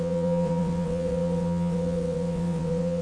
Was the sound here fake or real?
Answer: fake